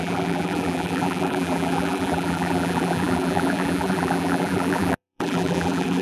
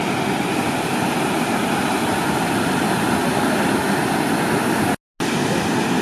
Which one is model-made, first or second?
first